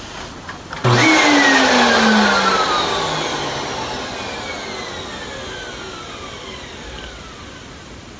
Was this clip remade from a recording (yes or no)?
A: no